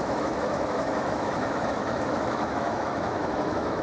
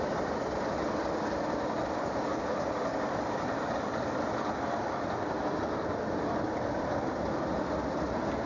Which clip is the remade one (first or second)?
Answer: first